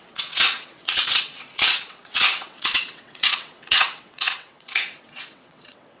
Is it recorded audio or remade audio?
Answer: remade